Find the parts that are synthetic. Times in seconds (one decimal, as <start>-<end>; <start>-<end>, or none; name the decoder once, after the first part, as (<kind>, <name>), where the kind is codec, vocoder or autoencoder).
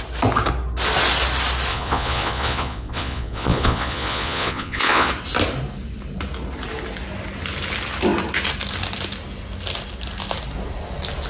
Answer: 1.7-5.1 (vocoder, Vocos)